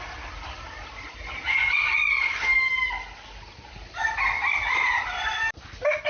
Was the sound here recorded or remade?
recorded